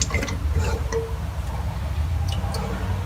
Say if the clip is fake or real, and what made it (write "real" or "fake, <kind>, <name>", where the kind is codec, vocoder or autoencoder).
real